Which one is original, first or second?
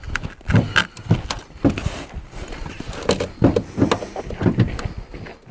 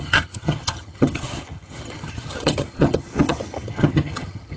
first